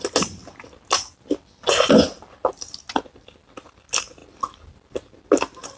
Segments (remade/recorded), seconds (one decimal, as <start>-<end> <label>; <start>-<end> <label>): 0.0-5.8 recorded